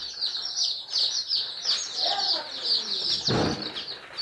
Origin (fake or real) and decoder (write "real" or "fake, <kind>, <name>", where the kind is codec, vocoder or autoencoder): real